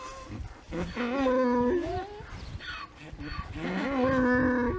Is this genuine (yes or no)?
yes